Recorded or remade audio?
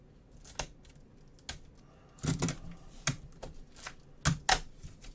recorded